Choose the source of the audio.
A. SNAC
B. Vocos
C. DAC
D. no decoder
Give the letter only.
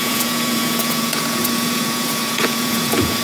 B